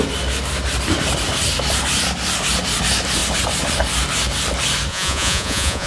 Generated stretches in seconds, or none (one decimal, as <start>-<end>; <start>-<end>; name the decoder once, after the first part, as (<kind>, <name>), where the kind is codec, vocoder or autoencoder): 4.9-5.9 (vocoder, Vocos)